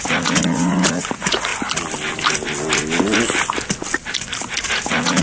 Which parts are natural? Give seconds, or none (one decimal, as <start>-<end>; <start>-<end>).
1.5-4.6